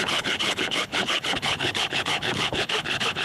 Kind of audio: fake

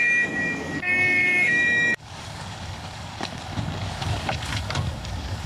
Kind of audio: fake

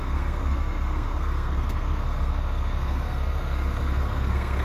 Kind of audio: fake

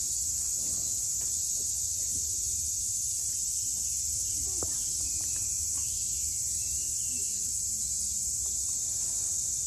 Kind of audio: real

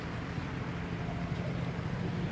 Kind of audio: fake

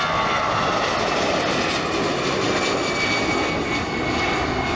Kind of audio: real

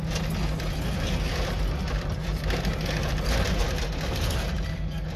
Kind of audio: real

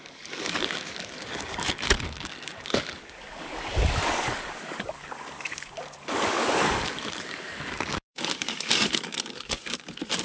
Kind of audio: fake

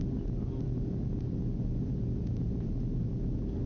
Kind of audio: real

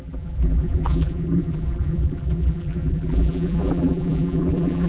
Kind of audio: fake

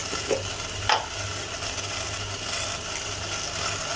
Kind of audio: real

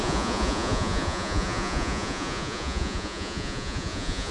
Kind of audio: fake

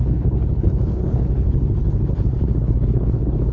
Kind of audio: fake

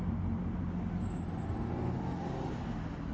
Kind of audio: real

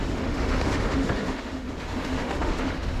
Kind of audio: fake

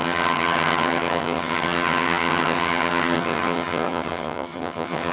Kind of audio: fake